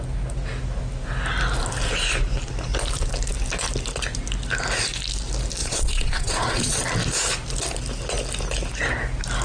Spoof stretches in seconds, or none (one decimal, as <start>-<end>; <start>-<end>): 5.6-6.8